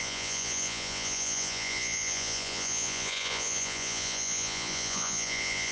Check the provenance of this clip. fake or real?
fake